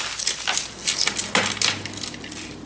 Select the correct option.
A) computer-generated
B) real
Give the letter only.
B